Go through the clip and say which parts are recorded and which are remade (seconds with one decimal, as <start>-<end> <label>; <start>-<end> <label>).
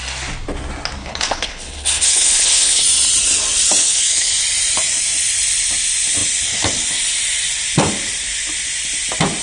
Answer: 0.0-1.0 recorded; 1.0-2.8 remade; 2.8-3.8 recorded; 3.8-4.3 remade; 4.3-9.4 recorded